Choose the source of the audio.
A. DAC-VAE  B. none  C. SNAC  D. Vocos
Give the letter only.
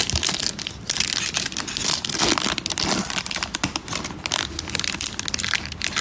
B